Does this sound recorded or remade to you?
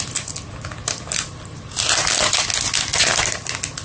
recorded